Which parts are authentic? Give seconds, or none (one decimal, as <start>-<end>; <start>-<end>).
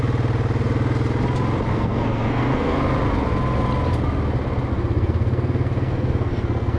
0.0-1.7; 2.8-4.7